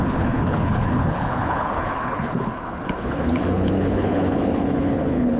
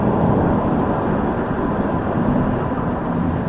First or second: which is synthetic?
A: first